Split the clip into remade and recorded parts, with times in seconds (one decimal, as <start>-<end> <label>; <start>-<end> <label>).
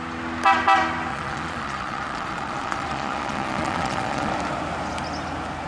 0.0-1.1 recorded; 1.1-4.3 remade; 4.3-5.7 recorded